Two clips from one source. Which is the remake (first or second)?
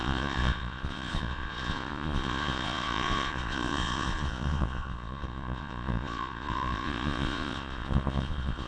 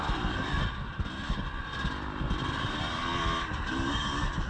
first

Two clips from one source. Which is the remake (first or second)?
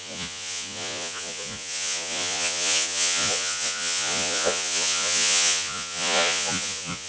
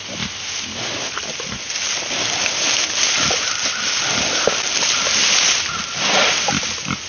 first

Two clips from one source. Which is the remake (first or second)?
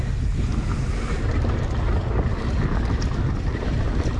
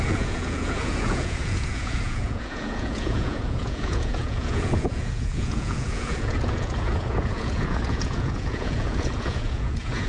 second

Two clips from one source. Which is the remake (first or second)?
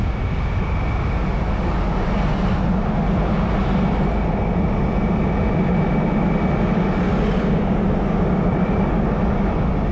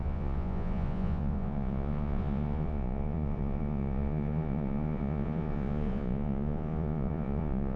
second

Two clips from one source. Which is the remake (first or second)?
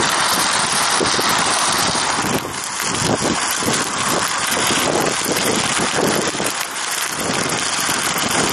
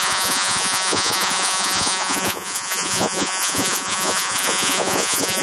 second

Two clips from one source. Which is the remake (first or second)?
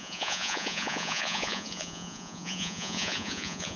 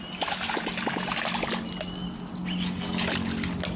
first